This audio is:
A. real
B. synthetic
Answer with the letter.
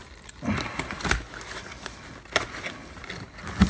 A